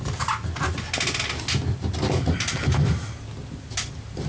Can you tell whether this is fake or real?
real